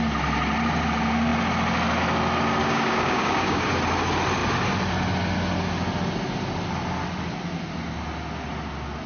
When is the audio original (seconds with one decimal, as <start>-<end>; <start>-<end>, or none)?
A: 0.0-2.6; 3.7-9.1